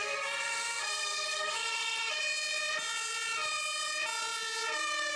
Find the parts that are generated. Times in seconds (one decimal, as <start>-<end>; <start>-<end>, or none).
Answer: 0.0-2.2